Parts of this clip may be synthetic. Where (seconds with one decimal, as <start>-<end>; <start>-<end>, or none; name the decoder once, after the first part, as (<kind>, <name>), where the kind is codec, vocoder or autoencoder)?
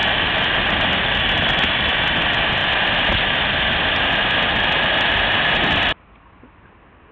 none